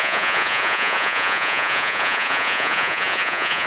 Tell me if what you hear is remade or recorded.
remade